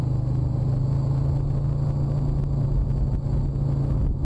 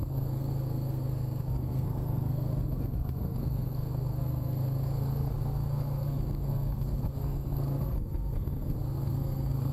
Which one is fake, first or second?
second